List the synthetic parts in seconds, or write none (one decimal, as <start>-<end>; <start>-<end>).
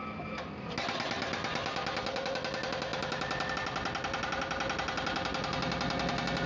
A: none